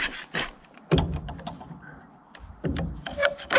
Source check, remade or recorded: recorded